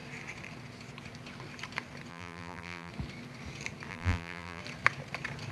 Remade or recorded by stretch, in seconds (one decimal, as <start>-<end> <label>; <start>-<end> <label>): 0.0-2.1 recorded; 2.1-2.9 remade; 2.9-3.9 recorded; 3.9-4.6 remade; 4.6-5.5 recorded